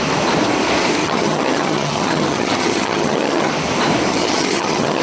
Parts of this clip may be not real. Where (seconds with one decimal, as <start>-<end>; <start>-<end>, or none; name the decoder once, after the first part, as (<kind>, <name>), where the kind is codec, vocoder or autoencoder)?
1.0-3.5 (vocoder, HiFi-GAN); 4.1-5.0